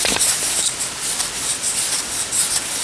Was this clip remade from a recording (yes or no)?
no